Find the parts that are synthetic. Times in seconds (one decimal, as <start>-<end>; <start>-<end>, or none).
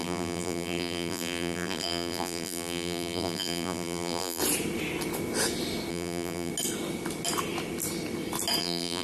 0.0-4.4; 5.9-6.5; 8.6-9.0